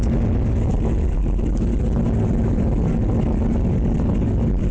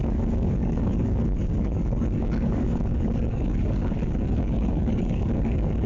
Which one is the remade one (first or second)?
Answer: second